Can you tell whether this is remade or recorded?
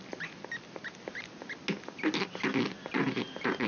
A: recorded